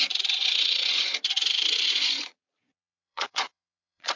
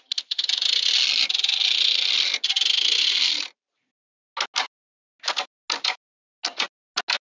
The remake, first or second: first